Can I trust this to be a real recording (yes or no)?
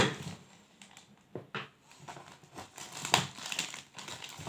yes